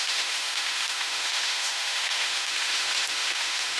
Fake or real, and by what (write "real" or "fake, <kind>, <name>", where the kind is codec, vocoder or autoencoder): fake, autoencoder, DAC-VAE